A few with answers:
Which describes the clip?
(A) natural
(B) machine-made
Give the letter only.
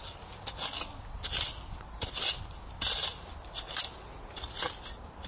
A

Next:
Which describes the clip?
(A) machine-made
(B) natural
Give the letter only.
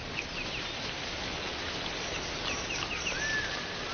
B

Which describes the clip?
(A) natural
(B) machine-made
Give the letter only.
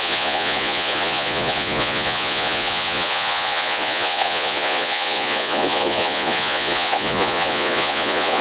B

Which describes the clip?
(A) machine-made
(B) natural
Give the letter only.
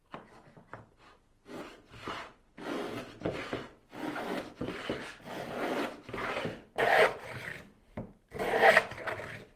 B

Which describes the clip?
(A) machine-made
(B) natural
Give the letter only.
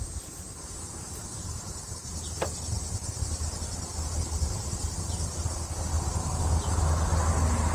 B